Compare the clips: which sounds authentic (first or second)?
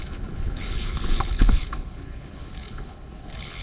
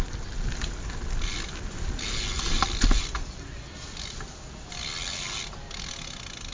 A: second